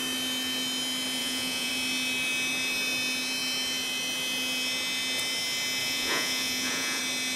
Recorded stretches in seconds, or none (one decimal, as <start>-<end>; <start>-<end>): 0.0-1.2; 1.7-5.8; 7.0-7.4